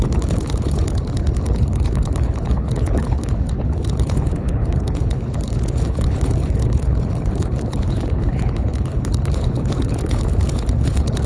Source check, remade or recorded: remade